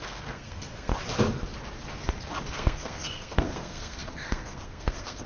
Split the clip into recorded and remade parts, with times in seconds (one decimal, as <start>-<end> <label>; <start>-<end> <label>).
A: 0.0-0.9 remade; 0.9-2.5 recorded; 2.5-5.3 remade